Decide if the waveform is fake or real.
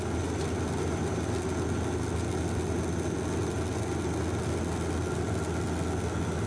real